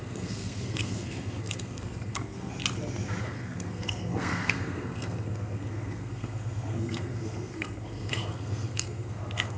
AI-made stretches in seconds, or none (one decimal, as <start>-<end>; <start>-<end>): 0.0-2.5; 3.2-9.6

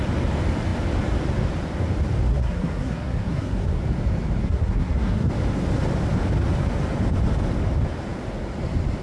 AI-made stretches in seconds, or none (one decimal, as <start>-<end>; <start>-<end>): 2.3-3.8; 4.4-5.3